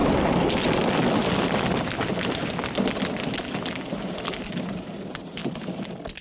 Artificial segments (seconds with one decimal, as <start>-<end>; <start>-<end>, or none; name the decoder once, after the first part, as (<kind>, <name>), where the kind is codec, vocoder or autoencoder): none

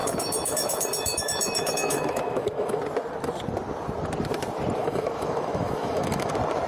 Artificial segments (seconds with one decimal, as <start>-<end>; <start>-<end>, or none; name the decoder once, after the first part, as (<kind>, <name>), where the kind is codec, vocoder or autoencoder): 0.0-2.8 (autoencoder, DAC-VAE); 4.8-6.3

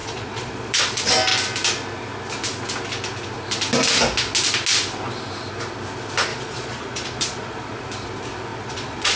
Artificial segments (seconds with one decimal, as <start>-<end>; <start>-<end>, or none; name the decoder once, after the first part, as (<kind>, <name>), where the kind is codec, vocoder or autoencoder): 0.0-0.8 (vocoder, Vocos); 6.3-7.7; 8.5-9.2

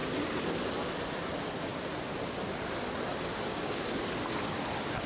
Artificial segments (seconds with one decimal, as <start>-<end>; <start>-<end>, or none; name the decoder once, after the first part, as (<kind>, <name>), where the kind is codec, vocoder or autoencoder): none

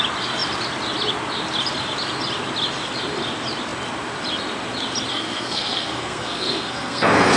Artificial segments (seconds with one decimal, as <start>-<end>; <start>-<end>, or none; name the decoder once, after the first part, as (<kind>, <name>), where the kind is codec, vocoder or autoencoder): 5.1-7.4 (codec, SNAC)